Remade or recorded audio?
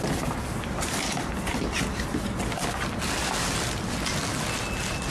recorded